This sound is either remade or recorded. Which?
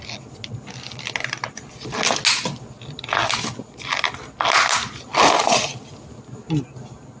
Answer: recorded